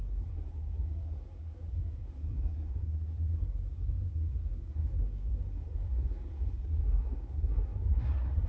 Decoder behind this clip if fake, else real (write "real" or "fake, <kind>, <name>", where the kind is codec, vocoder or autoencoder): fake, codec, SNAC